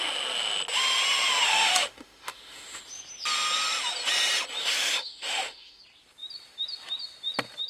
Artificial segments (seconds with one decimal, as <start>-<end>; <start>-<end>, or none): 1.5-2.8; 4.6-5.8